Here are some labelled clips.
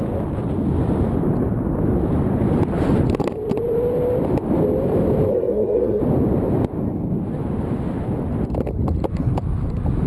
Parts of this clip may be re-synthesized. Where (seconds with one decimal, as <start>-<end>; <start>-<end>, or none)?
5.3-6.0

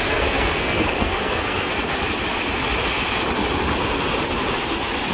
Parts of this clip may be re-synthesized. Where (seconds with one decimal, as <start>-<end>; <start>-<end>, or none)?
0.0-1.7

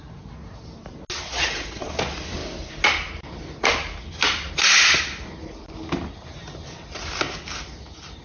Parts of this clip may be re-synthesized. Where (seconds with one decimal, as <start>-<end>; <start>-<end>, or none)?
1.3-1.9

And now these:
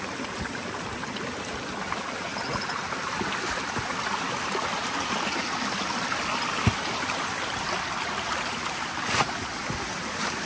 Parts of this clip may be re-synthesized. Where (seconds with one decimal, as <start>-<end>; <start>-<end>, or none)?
none